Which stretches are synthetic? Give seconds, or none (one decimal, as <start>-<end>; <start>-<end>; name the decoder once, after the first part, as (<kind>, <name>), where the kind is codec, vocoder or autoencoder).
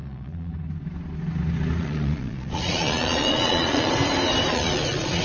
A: 0.0-0.5 (vocoder, Vocos); 1.8-3.9; 4.5-5.2